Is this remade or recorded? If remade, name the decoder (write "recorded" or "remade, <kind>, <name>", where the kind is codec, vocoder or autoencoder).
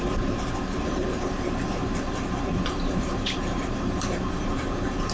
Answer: remade, vocoder, BigVGAN v2